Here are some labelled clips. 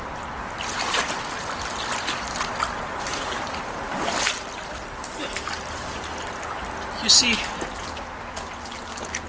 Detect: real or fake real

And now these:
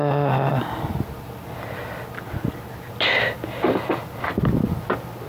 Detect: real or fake real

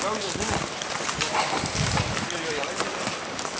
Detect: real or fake real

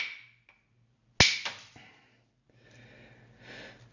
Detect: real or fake real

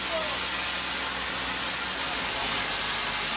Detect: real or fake real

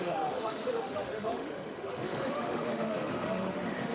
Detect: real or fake fake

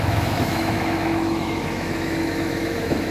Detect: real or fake fake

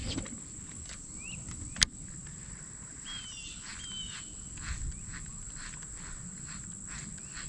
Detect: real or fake real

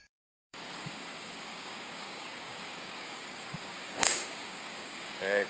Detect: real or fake fake